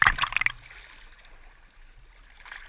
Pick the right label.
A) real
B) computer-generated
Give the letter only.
A